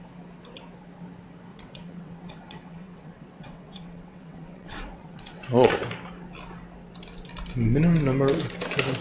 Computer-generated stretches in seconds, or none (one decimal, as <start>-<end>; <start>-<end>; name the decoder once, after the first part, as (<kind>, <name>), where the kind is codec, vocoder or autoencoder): 1.5-5.7 (vocoder, WaveNeXt)